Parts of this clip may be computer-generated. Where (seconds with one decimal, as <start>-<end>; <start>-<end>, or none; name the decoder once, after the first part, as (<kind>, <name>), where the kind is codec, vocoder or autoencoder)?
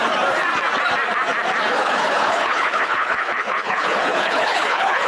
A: 1.8-5.1 (codec, HILCodec)